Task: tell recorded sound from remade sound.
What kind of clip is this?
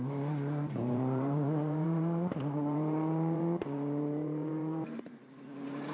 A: remade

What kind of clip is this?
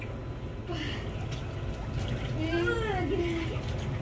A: recorded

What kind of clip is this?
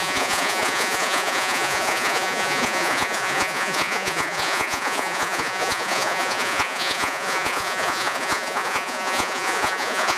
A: remade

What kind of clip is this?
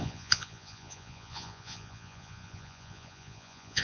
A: remade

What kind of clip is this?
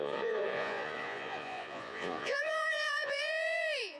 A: remade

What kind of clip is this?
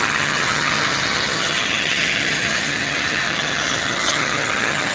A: remade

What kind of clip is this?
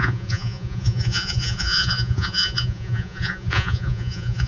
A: remade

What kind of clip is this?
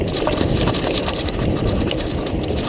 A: remade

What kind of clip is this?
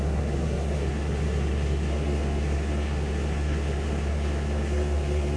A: remade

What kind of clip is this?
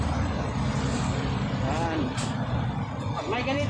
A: recorded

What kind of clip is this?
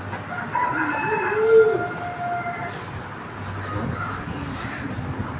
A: recorded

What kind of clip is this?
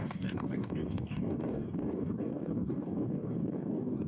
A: remade